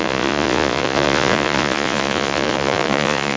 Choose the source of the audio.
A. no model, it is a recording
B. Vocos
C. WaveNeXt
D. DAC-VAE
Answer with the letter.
B